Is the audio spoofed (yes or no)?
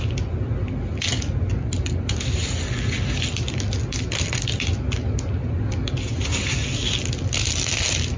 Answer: no